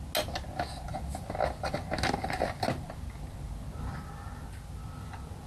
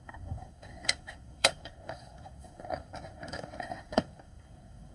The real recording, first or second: first